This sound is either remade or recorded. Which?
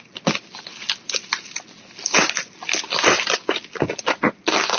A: recorded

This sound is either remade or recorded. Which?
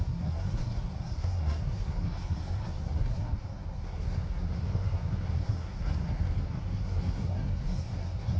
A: remade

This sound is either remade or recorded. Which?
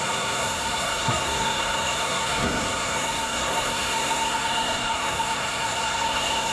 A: remade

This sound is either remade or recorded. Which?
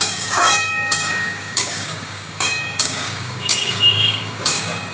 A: remade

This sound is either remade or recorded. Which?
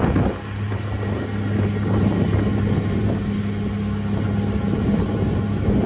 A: recorded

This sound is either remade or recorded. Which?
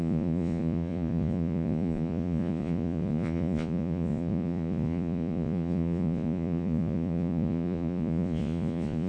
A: remade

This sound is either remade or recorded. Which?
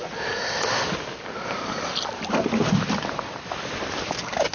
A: recorded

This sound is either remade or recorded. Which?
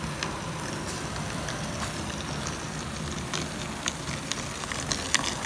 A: recorded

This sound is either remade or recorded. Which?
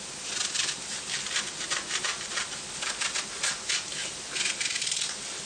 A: recorded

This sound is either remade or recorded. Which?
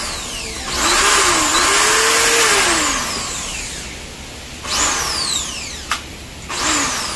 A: recorded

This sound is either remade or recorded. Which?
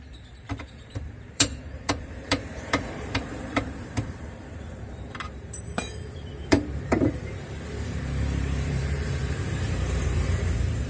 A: remade